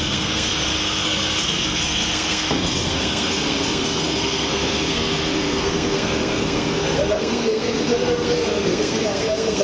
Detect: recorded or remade remade